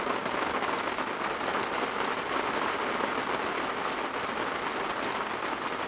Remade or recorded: recorded